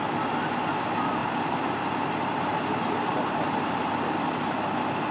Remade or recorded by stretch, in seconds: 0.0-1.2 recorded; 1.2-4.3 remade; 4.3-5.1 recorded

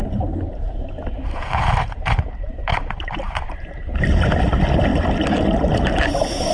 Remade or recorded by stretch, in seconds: 0.0-3.9 remade; 3.9-6.5 recorded

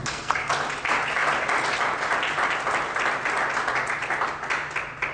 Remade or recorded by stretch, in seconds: 0.0-0.5 remade; 0.5-5.1 recorded

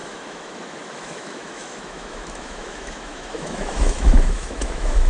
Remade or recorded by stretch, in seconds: 0.0-5.1 remade